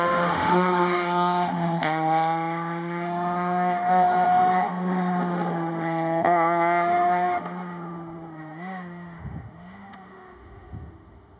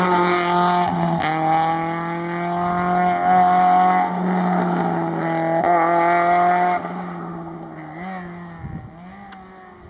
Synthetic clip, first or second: first